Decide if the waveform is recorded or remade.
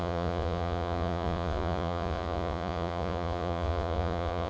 remade